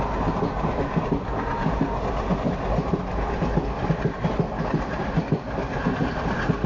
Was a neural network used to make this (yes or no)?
no